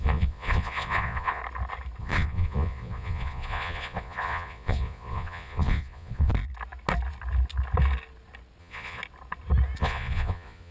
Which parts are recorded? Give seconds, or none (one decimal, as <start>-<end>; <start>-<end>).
1.4-2.0; 6.3-8.6; 9.0-9.8